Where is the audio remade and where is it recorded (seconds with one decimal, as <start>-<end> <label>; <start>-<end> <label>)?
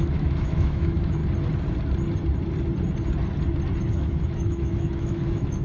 0.0-1.2 remade; 1.2-3.9 recorded; 3.9-5.6 remade